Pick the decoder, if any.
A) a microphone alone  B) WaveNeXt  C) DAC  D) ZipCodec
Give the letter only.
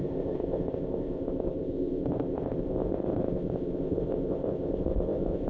D